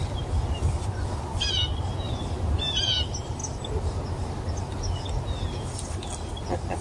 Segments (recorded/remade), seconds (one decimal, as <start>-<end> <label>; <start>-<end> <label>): 0.0-6.8 recorded